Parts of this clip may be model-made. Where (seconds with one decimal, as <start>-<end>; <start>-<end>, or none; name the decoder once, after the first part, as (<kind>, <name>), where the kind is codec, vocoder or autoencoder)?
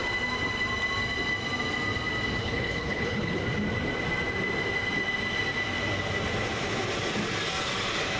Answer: 2.4-3.4 (codec, HILCodec)